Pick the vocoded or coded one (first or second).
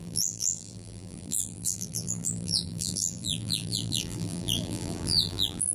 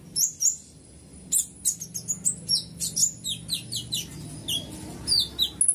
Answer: first